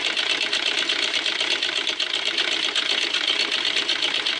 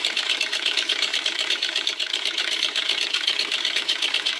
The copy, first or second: second